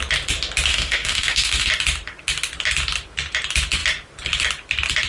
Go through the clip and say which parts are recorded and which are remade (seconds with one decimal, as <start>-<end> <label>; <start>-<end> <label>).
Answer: 0.0-0.7 recorded; 0.7-1.7 remade; 1.7-5.1 recorded